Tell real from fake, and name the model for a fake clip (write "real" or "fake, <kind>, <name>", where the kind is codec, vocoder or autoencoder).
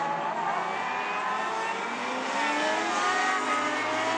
real